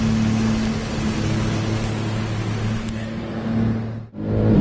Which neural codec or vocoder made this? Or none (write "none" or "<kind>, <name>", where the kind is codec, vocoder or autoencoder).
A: none